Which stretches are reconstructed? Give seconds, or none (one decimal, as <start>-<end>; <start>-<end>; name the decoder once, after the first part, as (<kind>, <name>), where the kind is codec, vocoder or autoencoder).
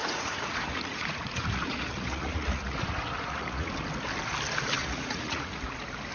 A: 0.0-3.7 (vocoder, Vocos); 4.8-5.5